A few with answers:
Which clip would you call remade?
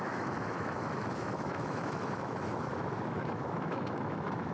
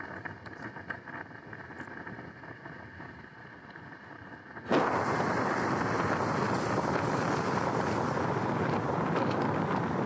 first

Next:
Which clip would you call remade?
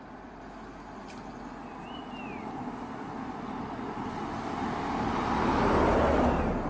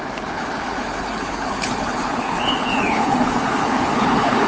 second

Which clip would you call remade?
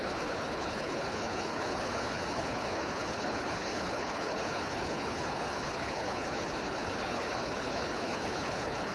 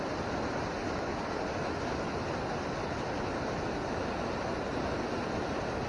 first